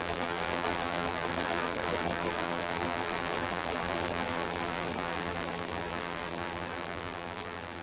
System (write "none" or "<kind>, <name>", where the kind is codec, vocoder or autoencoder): vocoder, BigVGAN v2